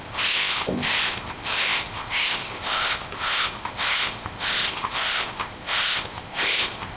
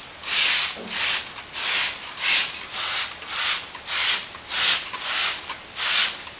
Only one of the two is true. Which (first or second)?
second